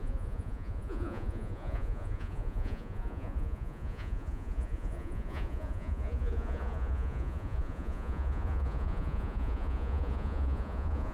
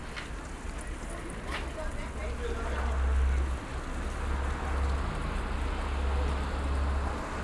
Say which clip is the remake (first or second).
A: first